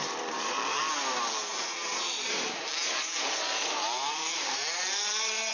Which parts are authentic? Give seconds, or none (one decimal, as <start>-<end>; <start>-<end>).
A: 0.8-1.5; 4.8-5.5